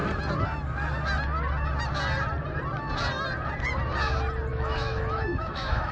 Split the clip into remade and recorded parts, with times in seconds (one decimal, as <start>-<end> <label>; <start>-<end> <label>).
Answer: 0.0-4.5 recorded; 4.5-5.9 remade